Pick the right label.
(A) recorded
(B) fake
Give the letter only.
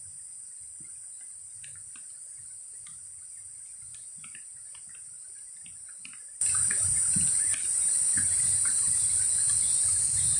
A